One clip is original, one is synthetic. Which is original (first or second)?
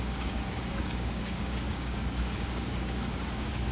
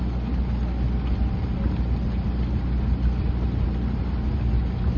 second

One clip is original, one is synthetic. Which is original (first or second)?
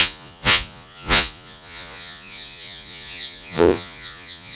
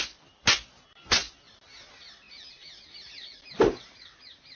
second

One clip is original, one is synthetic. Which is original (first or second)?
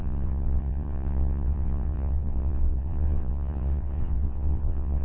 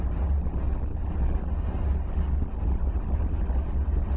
second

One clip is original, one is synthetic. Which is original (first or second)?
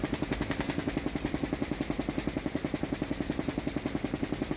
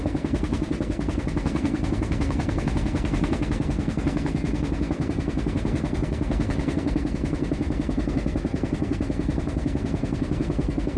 first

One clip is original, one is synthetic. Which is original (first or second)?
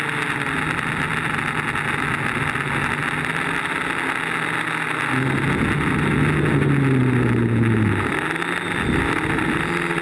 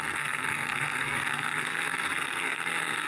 first